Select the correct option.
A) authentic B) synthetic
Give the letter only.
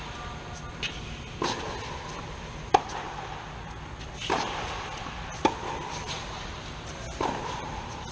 A